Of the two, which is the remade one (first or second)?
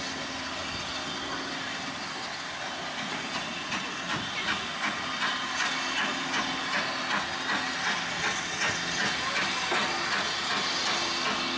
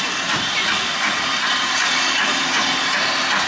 second